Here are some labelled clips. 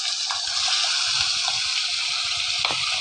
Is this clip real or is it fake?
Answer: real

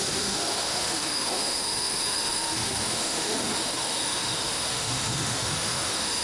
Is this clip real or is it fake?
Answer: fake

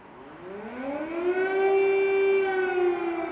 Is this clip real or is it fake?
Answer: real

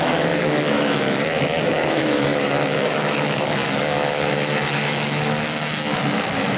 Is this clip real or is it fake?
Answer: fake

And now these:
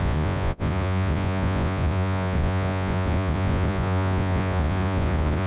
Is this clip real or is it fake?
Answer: fake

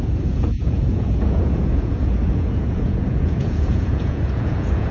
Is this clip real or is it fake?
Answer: fake